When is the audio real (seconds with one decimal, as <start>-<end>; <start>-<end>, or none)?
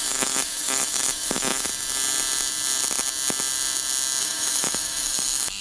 1.7-4.2